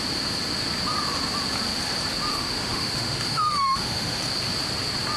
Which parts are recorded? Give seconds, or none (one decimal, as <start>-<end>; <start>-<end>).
0.0-2.3; 4.2-5.2